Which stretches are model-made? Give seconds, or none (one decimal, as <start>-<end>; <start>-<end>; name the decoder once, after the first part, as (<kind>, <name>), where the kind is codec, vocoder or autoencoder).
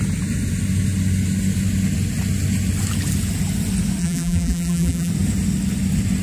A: 4.0-5.1 (vocoder, BigVGAN v2)